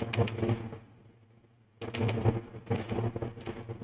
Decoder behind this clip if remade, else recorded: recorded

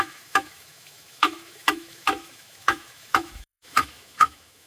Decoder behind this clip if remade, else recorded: remade, autoencoder, DAC-VAE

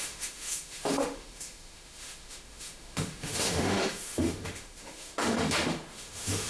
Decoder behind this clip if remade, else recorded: remade, autoencoder, DAC-VAE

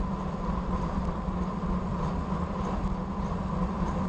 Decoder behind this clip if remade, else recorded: recorded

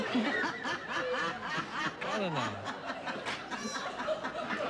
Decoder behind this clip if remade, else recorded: recorded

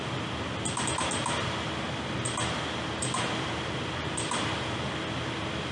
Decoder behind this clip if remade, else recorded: recorded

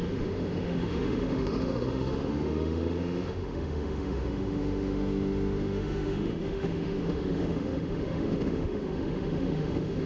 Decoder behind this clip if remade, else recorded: remade, autoencoder, DAC-VAE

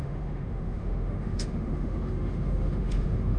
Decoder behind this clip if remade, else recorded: remade, autoencoder, DAC-VAE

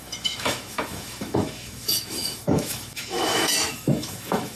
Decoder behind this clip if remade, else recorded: remade, autoencoder, DAC-VAE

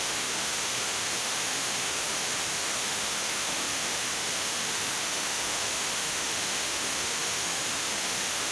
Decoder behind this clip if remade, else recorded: remade, autoencoder, DAC-VAE